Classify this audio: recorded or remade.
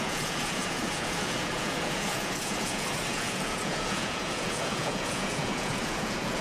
remade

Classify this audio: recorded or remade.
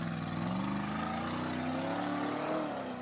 recorded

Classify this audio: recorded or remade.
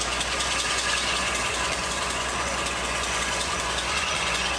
remade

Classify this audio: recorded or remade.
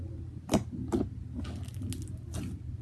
recorded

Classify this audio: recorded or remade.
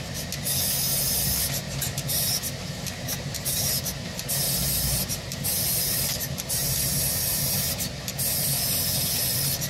recorded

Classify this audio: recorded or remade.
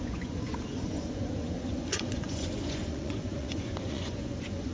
remade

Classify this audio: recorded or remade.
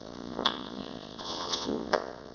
remade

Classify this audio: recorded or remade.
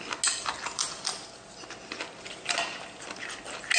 recorded